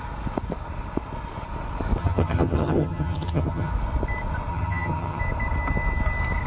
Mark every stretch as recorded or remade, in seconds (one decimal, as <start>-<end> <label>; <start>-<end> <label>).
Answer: 0.0-2.0 recorded; 2.0-3.7 remade; 3.7-4.5 recorded; 4.5-5.2 remade; 5.2-6.5 recorded